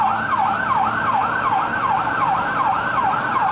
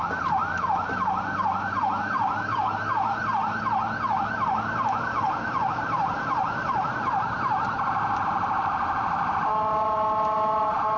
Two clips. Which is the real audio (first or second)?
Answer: first